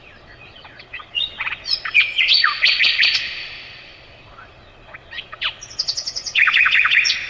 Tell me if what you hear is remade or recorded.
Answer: remade